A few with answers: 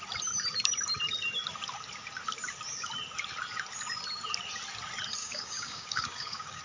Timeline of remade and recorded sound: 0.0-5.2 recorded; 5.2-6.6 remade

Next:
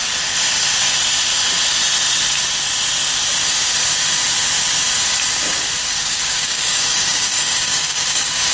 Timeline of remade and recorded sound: 0.0-5.9 recorded; 5.9-8.5 remade

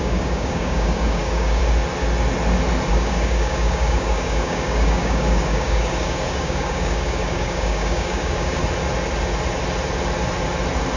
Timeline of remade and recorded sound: 0.0-1.6 remade; 1.6-2.9 recorded; 2.9-8.6 remade; 8.6-11.0 recorded

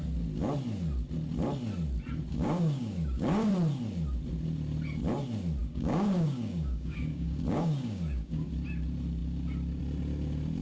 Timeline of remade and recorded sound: 0.0-2.3 recorded; 2.3-3.5 remade; 3.5-5.6 recorded; 5.6-8.5 remade; 8.5-10.6 recorded

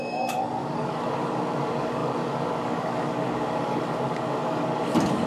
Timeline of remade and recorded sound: 0.0-5.3 remade